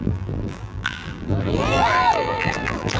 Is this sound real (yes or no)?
no